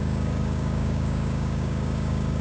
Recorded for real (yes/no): no